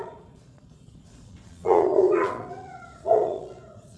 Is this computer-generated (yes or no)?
yes